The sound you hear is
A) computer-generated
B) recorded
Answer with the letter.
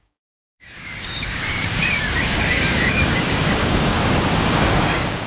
A